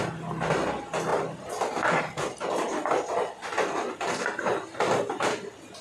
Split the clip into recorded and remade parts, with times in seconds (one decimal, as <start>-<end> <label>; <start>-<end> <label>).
0.0-5.8 recorded